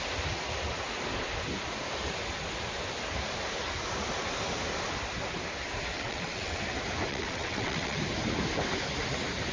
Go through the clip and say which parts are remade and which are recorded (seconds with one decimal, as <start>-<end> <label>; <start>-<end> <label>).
0.0-5.9 recorded; 5.9-6.6 remade; 6.6-7.1 recorded; 7.1-8.0 remade; 8.0-9.5 recorded